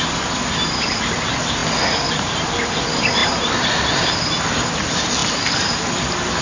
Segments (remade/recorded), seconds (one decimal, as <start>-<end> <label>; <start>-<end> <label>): 0.0-6.4 recorded